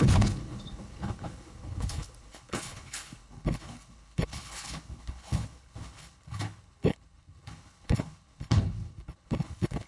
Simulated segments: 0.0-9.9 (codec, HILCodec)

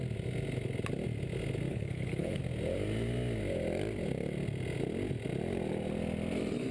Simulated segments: 1.7-2.4 (codec, HILCodec)

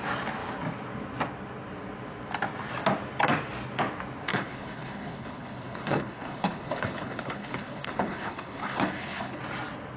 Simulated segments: 4.3-9.4 (codec, HILCodec)

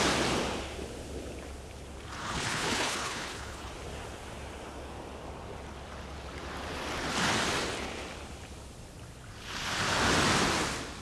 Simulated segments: 2.2-3.7 (codec, HILCodec)

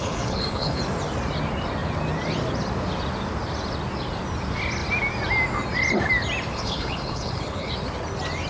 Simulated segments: 0.0-0.8 (codec, HILCodec); 6.5-7.7